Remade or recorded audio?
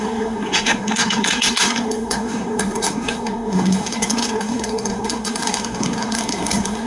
remade